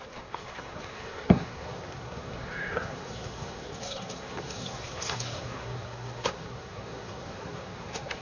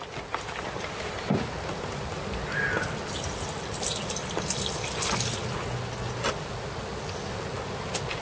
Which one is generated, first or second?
first